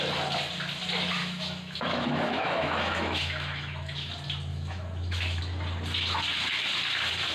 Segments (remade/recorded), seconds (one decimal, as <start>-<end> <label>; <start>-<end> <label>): 0.0-1.2 recorded; 1.2-4.1 remade; 4.1-4.5 recorded; 4.5-5.4 remade; 5.4-7.3 recorded